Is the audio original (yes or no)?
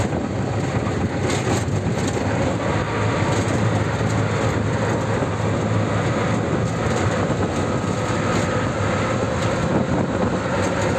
yes